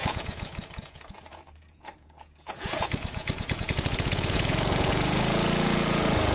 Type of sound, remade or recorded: remade